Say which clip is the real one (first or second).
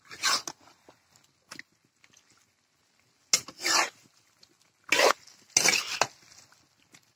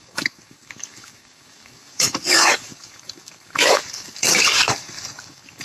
first